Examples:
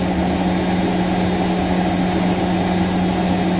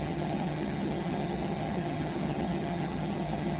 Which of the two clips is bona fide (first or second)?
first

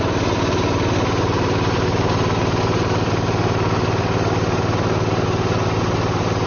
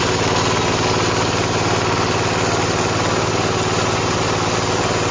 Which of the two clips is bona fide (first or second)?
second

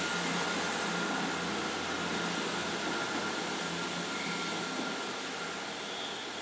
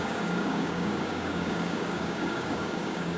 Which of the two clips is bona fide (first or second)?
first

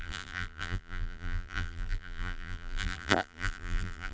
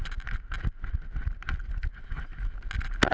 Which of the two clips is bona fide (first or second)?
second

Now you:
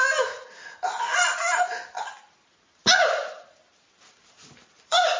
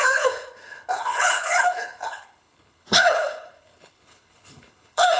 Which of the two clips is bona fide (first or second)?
first